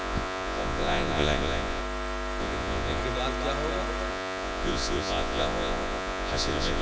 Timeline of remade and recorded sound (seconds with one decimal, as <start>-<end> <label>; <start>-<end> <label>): 0.0-1.8 remade; 1.8-2.4 recorded; 2.4-3.0 remade; 3.0-4.1 recorded; 4.1-6.8 remade